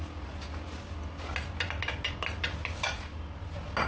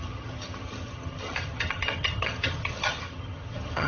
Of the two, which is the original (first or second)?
first